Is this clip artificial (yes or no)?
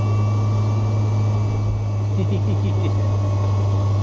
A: no